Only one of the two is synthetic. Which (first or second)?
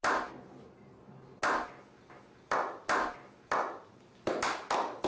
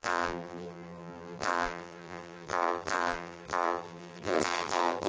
second